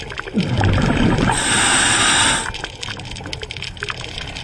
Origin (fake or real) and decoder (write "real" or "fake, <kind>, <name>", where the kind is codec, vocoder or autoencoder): real